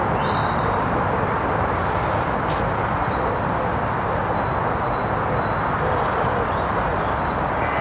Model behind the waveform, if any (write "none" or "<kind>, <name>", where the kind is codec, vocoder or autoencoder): none